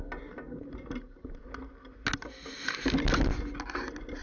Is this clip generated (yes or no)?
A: no